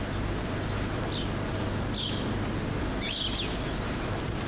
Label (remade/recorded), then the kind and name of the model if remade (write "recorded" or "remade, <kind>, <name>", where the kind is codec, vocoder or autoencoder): recorded